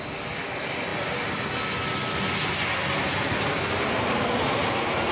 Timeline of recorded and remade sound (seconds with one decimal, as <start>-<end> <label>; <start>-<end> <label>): 0.0-5.1 recorded